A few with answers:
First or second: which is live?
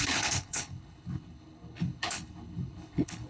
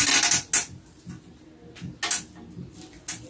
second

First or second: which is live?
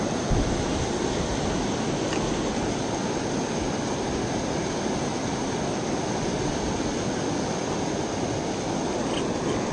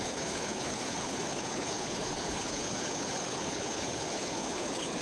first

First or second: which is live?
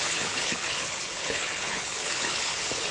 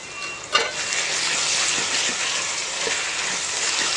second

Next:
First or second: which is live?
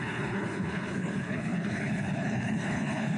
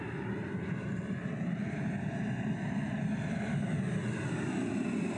second